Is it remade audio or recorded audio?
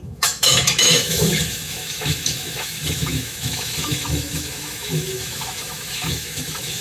remade